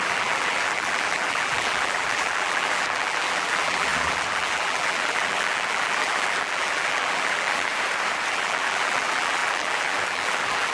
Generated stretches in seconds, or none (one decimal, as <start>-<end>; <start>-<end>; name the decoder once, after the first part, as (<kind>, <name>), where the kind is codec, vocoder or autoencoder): 0.0-7.7 (vocoder, BigVGAN v2); 8.3-10.7